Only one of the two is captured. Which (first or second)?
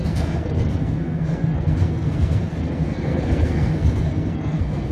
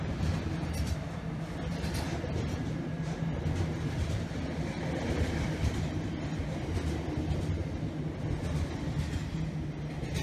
second